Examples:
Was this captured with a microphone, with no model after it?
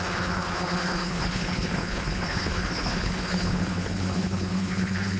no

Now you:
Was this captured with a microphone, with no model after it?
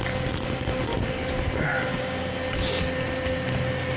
yes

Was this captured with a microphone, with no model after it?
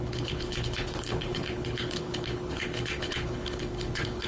no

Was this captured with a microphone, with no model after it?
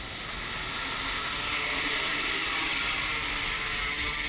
yes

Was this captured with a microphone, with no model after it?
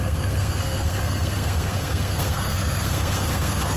no